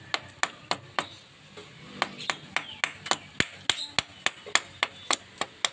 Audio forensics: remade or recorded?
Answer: recorded